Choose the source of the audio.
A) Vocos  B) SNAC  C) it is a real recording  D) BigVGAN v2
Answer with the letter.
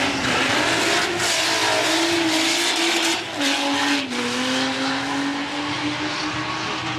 C